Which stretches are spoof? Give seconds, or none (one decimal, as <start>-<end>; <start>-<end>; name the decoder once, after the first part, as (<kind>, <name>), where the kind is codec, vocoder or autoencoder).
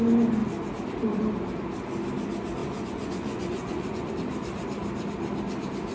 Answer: 2.6-4.1 (vocoder, Vocos)